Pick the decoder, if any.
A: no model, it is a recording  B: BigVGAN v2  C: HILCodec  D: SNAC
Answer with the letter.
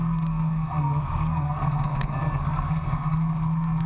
D